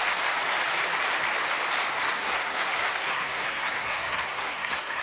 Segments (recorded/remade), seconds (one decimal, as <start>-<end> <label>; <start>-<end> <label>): 0.0-1.9 recorded; 1.9-5.0 remade